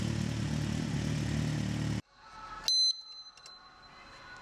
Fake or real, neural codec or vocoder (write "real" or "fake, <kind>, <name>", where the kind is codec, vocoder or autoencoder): real